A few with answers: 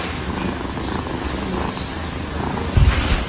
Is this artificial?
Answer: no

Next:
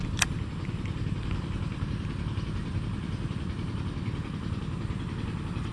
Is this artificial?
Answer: no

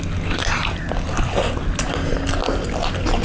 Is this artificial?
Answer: no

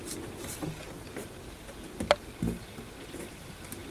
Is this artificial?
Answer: no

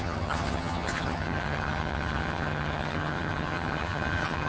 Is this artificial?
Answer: yes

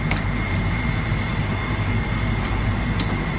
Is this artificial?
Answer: yes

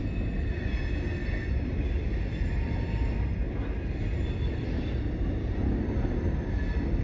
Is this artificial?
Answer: no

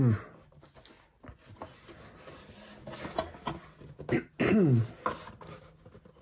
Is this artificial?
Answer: no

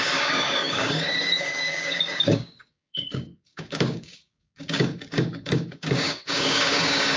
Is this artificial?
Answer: yes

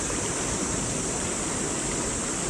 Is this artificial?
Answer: no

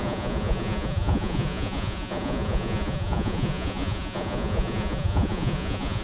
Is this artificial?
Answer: yes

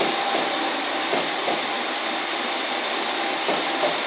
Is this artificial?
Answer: yes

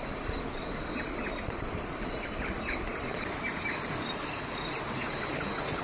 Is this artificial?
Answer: no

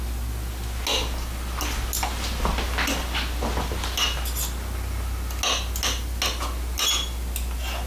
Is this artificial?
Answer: no